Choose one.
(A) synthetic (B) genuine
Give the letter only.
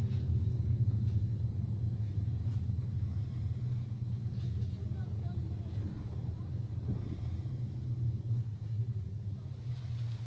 B